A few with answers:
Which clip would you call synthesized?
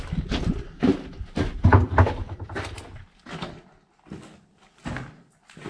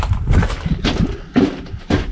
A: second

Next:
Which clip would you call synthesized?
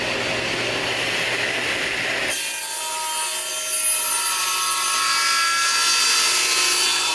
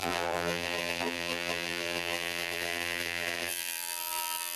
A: second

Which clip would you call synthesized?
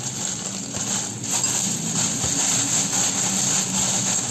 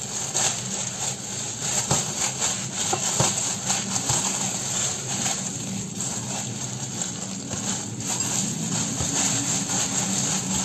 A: second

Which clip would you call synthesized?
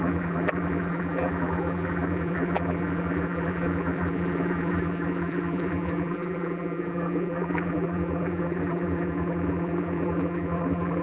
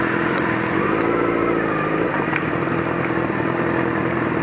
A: first